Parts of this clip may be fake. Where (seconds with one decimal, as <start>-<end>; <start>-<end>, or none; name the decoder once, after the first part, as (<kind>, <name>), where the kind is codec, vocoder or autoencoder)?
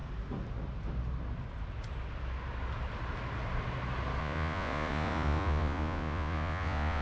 4.2-7.0 (vocoder, Vocos)